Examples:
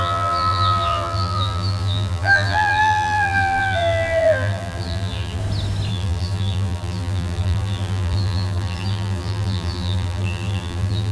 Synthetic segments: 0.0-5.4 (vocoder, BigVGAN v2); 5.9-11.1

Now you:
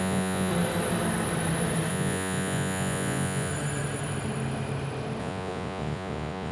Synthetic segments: 0.0-0.5 (vocoder, Vocos); 1.9-3.5; 5.2-6.5

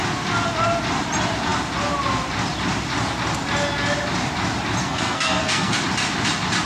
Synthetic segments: 4.8-5.8 (codec, SNAC)

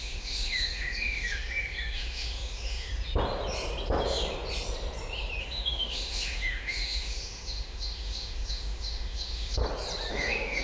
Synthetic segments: 0.0-2.9 (autoencoder, DAC-VAE); 5.4-9.6; 10.1-10.6